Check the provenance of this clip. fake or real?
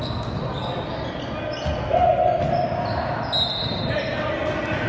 real